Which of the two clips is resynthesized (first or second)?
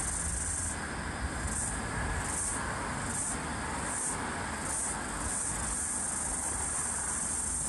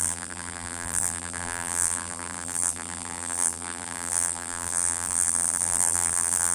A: second